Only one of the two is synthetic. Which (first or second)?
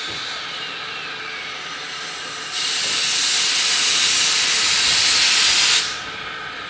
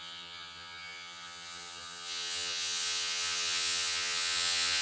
second